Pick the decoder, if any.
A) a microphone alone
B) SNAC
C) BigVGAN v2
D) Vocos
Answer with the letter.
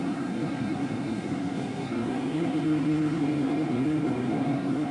B